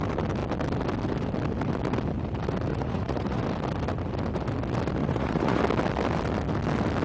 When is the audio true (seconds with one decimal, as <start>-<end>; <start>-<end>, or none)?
0.0-2.7; 3.4-5.0; 5.6-7.0